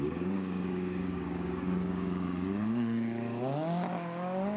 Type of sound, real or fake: fake